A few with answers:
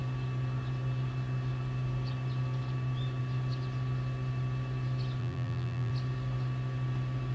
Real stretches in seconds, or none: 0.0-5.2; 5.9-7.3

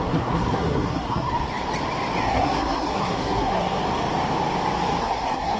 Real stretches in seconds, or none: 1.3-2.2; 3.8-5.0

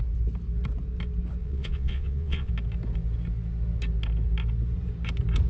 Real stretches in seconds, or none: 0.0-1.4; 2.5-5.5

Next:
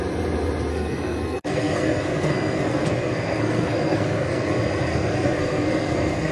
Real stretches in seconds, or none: 0.0-0.7; 4.5-4.9

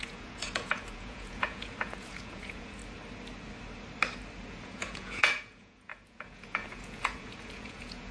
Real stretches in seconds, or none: 2.8-4.5

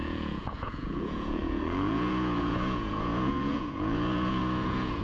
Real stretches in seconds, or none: none